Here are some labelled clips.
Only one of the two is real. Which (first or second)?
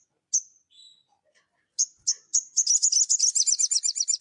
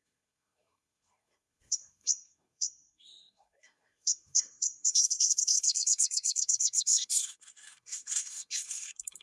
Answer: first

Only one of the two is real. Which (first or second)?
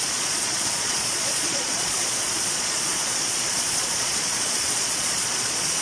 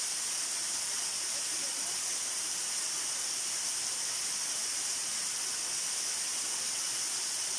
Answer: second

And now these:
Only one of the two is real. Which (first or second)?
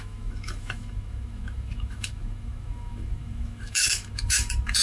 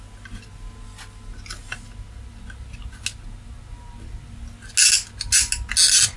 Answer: second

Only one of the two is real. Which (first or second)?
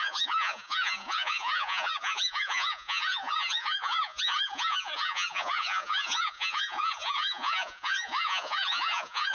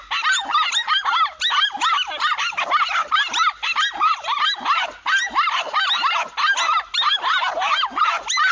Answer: second